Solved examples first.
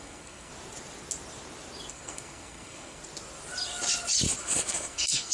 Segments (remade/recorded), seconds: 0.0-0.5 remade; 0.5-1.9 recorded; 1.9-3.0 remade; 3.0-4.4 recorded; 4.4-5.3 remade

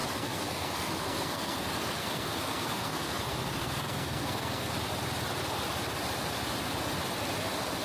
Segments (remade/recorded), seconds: 0.0-4.7 remade; 4.7-7.8 recorded

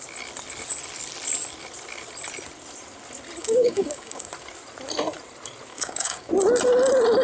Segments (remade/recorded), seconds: 0.0-3.4 recorded; 3.4-4.3 remade; 4.3-5.7 recorded; 5.7-6.3 remade; 6.3-7.2 recorded

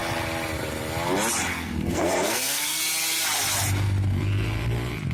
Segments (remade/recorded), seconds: 0.0-1.5 recorded; 1.5-2.8 remade; 2.8-5.1 recorded

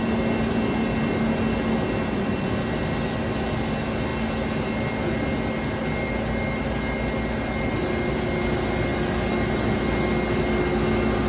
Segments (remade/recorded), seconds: 0.0-11.3 recorded

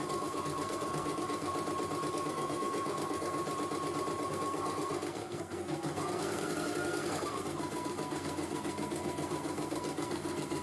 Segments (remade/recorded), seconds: 0.0-1.5 remade; 1.5-2.1 recorded; 2.1-3.4 remade; 3.4-4.3 recorded; 4.3-10.6 remade

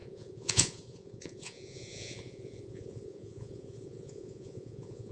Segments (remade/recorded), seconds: 0.0-5.1 remade